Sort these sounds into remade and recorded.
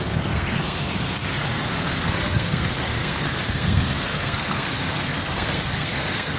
remade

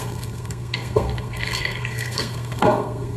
remade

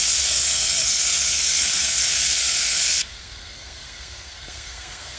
remade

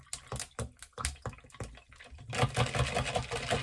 recorded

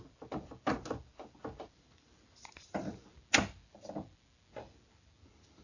recorded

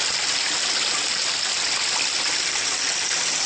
recorded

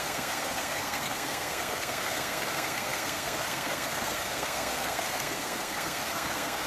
remade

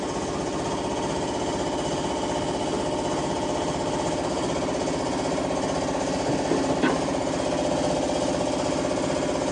recorded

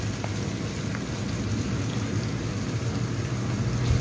recorded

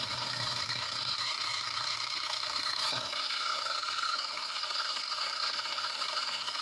remade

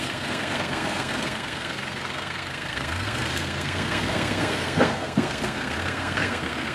remade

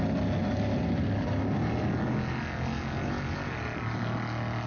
recorded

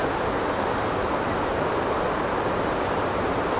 recorded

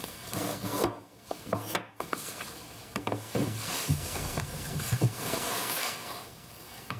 remade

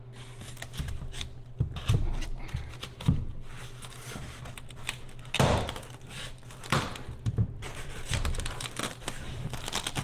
recorded